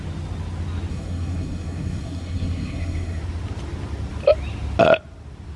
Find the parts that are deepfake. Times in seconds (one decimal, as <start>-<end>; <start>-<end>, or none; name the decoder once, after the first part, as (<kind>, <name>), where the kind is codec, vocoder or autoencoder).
0.9-3.2 (codec, SNAC)